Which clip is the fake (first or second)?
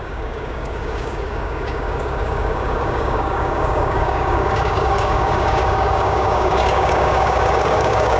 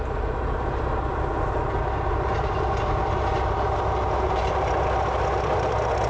first